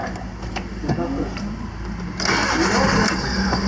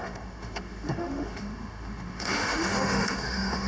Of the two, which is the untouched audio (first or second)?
first